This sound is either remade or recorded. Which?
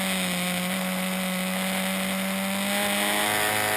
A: recorded